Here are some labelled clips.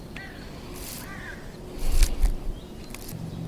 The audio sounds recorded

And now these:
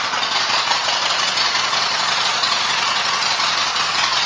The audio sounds remade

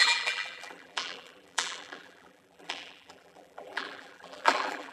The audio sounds remade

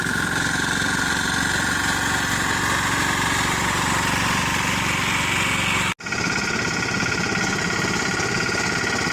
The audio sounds recorded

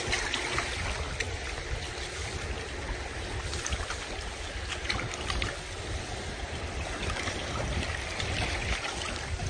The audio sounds recorded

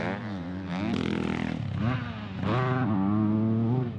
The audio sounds recorded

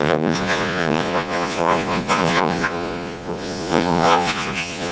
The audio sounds remade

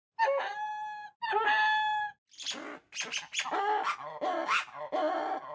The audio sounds recorded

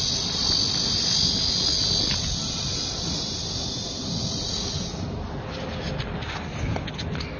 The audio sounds recorded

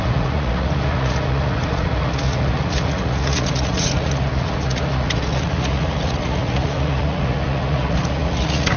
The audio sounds remade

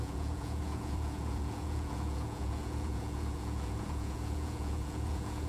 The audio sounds remade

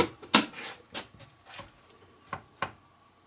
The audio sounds recorded